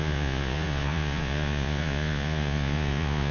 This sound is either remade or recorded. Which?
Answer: remade